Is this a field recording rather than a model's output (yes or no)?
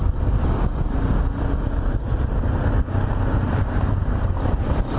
yes